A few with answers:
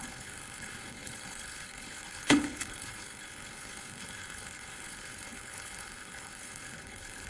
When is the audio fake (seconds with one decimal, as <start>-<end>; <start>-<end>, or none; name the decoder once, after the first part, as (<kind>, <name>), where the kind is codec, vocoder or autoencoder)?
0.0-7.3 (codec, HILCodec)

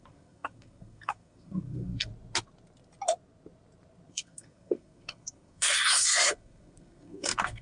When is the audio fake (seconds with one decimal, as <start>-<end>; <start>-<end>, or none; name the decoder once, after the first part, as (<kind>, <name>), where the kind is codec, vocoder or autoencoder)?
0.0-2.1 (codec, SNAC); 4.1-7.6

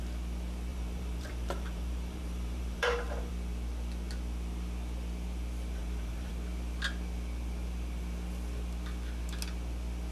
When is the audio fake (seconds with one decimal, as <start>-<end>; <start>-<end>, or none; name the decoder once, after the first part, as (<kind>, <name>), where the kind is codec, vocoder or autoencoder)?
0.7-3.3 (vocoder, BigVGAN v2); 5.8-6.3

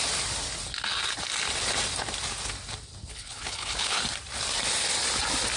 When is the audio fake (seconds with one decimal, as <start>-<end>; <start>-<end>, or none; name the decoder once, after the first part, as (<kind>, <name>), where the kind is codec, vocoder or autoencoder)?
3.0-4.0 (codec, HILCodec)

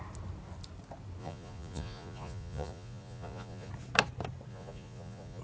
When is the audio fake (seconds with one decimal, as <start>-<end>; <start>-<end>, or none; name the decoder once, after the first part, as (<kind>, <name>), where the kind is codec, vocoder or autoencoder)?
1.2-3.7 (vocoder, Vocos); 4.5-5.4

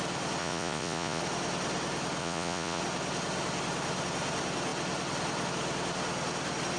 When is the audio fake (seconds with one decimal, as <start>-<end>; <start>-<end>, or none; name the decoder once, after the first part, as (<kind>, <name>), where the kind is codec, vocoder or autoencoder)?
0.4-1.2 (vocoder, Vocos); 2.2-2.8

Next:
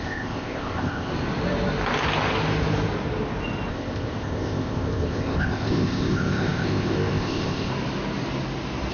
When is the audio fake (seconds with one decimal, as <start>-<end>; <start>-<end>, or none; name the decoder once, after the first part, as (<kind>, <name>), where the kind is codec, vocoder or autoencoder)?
0.0-1.1 (codec, ZipCodec); 3.7-7.7

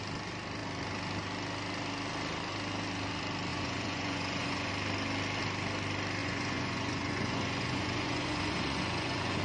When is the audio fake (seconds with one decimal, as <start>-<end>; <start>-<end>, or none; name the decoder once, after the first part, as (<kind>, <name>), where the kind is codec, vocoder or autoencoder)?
3.5-4.7 (vocoder, Vocos); 6.2-9.4